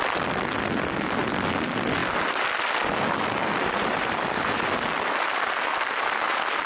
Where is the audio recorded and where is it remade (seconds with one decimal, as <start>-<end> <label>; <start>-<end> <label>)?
0.0-6.7 recorded

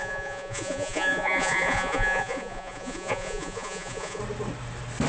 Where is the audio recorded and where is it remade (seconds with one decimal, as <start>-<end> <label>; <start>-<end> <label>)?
0.0-4.2 remade; 4.2-5.1 recorded

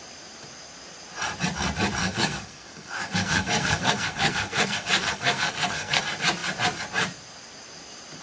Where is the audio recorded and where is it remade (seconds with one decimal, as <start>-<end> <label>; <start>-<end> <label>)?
0.0-2.0 recorded; 2.0-6.0 remade; 6.0-8.2 recorded

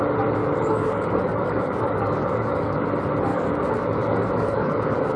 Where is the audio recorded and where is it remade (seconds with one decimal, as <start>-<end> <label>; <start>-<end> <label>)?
0.0-0.4 recorded; 0.4-2.9 remade; 2.9-3.3 recorded; 3.3-5.2 remade

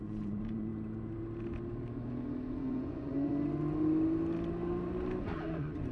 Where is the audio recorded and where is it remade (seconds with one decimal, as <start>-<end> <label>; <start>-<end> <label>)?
0.0-0.7 remade; 0.7-2.6 recorded; 2.6-3.3 remade; 3.3-5.2 recorded; 5.2-5.9 remade

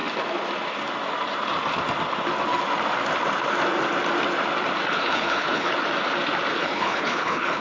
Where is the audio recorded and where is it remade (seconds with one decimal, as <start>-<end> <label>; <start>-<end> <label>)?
0.0-4.9 recorded; 4.9-5.7 remade; 5.7-6.5 recorded; 6.5-7.6 remade

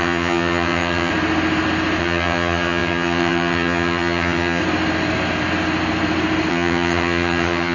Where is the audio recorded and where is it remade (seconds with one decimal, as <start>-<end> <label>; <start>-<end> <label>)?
0.0-1.1 remade; 1.1-2.0 recorded; 2.0-4.6 remade; 4.6-6.5 recorded; 6.5-7.7 remade